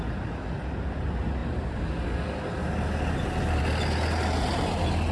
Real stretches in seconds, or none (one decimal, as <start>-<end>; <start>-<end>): 0.0-5.1